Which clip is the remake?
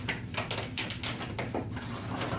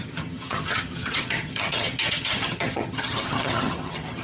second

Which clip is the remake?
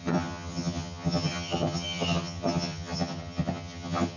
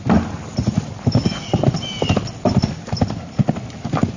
first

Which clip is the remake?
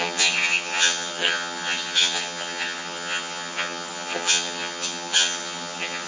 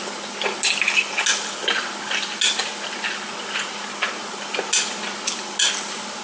first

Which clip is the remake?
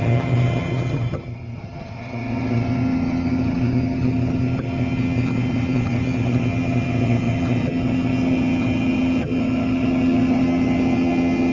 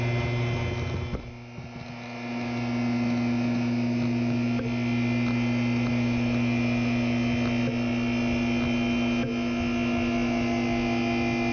first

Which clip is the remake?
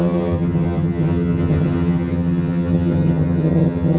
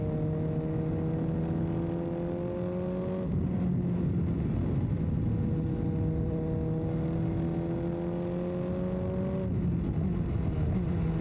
first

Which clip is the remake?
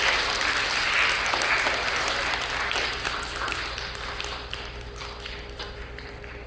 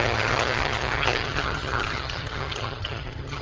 second